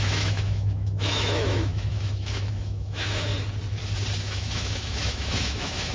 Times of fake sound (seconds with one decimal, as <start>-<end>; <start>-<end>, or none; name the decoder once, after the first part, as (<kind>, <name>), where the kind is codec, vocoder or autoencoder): 0.0-3.3 (autoencoder, DAC-VAE); 4.2-5.9